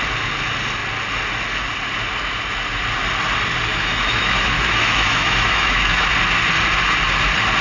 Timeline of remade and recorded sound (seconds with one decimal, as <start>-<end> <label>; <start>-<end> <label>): 0.0-3.7 recorded; 3.7-6.1 remade; 6.1-7.6 recorded